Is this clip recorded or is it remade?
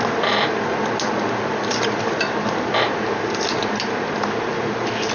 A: recorded